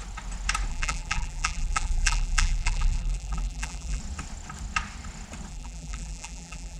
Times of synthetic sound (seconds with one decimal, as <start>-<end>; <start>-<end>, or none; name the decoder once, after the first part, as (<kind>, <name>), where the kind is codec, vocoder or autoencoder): 0.7-4.0 (vocoder, BigVGAN v2); 5.5-6.8